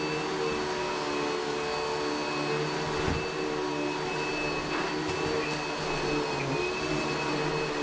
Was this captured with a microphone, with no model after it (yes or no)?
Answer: yes